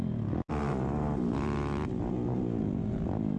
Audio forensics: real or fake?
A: real